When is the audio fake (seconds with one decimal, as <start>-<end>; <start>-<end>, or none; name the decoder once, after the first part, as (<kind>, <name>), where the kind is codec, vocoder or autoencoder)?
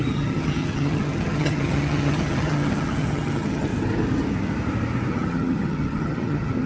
0.0-3.7 (vocoder, HiFi-GAN); 5.1-6.7